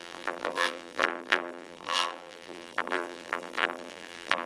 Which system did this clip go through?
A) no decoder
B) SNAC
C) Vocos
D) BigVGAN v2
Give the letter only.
D